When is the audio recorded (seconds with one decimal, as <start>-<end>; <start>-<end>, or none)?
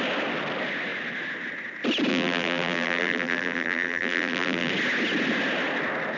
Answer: 0.0-2.1; 4.7-6.2